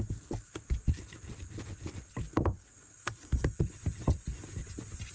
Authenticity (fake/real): real